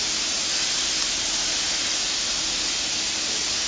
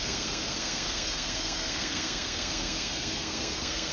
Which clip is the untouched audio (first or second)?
first